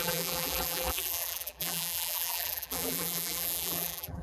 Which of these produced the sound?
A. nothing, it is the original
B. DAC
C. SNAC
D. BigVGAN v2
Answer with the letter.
D